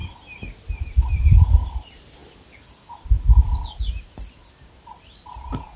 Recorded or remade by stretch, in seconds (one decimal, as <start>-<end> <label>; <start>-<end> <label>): 0.0-5.8 recorded